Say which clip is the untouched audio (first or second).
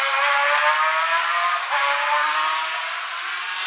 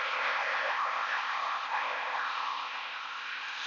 first